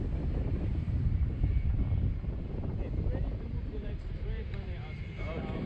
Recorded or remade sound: remade